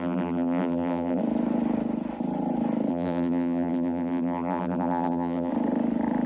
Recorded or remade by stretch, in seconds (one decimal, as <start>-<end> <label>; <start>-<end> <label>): 0.0-1.2 remade; 1.2-2.9 recorded; 2.9-5.5 remade; 5.5-6.3 recorded